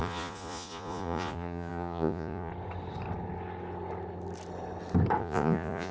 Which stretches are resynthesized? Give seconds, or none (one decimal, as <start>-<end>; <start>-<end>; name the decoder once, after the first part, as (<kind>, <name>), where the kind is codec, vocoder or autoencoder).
0.0-2.5 (vocoder, Vocos); 5.2-5.9